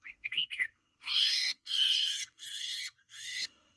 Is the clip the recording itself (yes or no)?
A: no